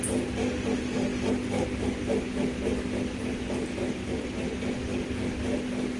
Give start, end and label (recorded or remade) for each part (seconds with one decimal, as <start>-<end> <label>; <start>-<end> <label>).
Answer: 0.0-6.0 recorded